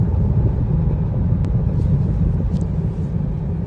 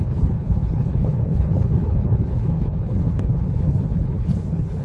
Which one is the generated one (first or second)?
second